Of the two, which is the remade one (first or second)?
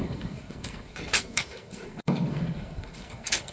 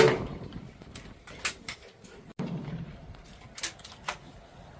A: first